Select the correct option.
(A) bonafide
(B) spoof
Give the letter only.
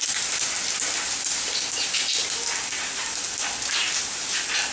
A